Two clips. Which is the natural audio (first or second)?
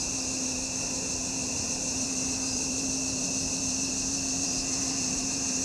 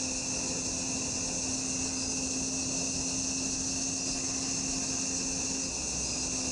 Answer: second